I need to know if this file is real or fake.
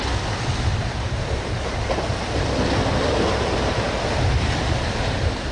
real